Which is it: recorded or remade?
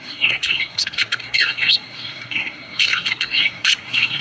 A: remade